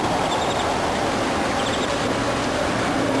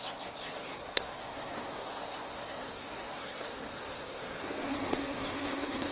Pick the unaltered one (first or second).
first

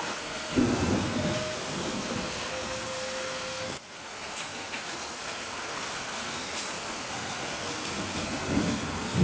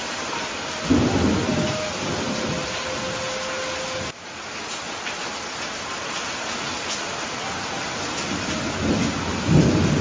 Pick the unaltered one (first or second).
second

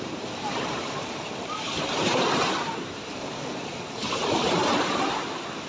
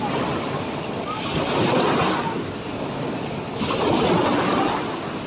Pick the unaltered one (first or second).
second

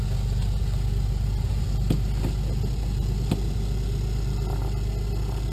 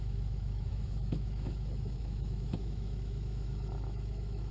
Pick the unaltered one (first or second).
first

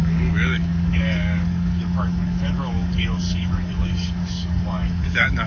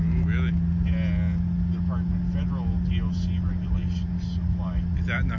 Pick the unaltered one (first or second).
second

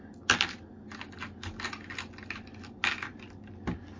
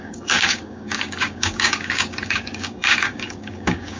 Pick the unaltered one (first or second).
first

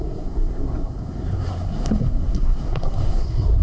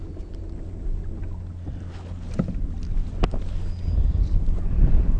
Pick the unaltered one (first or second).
second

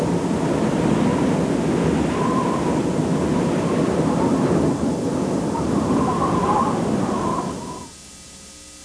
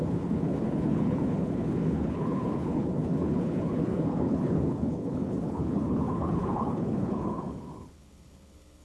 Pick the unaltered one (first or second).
first